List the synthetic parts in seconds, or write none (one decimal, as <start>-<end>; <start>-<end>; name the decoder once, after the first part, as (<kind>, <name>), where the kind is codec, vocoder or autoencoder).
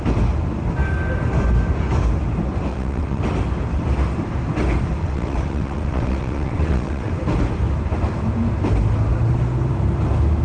2.7-3.2 (vocoder, WaveNeXt); 5.0-7.1